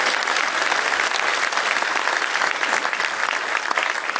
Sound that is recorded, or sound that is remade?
remade